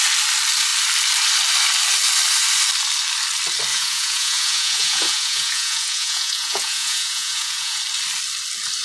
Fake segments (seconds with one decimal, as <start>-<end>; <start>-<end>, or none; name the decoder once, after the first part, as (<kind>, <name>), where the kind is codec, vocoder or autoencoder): 3.7-7.8 (vocoder, Vocos)